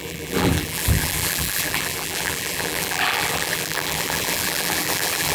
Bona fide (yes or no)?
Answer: no